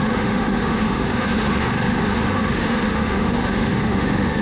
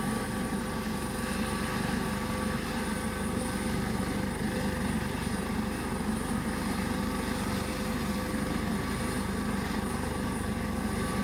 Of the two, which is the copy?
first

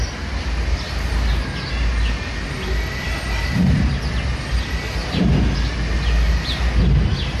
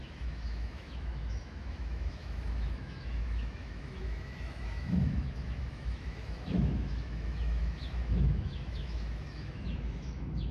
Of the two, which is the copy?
second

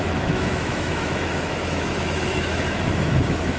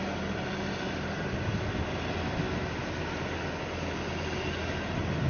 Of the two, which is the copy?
first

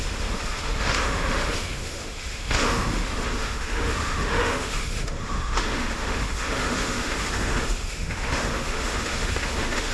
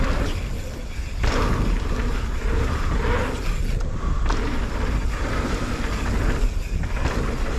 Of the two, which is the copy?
first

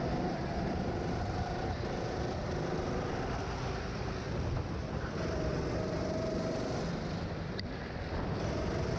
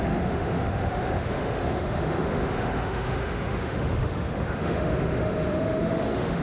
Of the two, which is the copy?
second